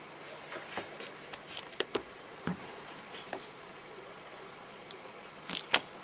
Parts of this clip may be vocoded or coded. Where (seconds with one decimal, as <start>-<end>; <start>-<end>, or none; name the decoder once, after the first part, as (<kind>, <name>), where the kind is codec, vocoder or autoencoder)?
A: 1.7-5.3 (vocoder, Vocos)

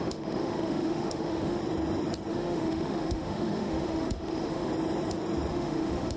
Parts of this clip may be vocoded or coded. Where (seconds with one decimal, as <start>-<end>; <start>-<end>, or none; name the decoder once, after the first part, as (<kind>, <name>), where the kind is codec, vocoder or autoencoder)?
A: 0.0-1.6 (autoencoder, DAC-VAE); 2.3-4.7; 5.5-6.2

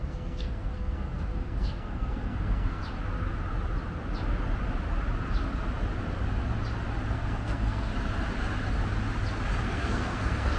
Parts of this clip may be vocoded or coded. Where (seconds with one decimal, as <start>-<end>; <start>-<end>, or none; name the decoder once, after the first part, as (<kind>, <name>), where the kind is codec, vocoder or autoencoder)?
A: 0.0-2.8 (codec, SNAC); 7.1-7.9; 9.6-10.6

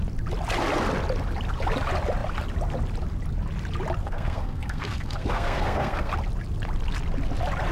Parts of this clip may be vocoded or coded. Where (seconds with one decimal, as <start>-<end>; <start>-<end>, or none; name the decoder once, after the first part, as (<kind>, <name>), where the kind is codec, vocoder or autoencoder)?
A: 4.0-6.1 (codec, SNAC)

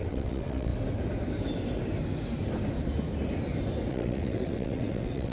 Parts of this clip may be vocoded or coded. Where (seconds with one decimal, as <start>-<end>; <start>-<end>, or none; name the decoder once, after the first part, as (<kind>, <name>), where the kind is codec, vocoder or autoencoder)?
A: 0.0-0.7 (vocoder, WaveNeXt); 3.9-5.3